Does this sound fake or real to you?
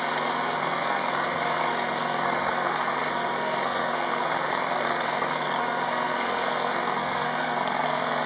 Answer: fake